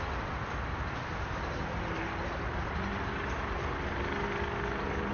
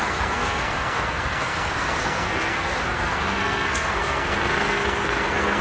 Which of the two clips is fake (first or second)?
second